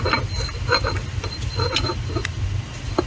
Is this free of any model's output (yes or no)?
yes